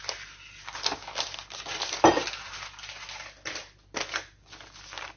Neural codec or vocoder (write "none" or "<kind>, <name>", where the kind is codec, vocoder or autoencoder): none